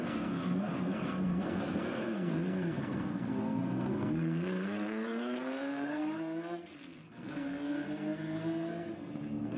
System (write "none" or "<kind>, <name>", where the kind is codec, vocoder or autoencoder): codec, SNAC